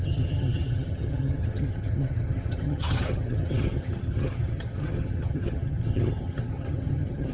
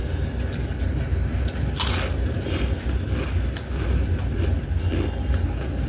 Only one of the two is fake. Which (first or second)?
first